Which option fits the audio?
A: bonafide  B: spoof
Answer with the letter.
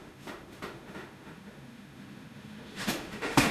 B